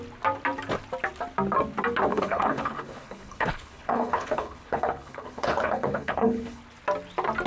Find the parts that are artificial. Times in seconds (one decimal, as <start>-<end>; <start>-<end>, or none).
2.1-6.6